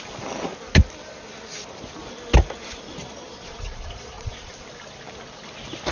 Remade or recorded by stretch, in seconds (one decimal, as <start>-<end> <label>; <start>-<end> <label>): 0.0-3.0 recorded; 3.0-4.5 remade; 4.5-5.9 recorded